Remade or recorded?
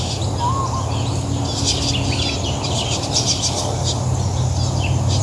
recorded